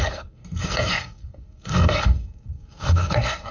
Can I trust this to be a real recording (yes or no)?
no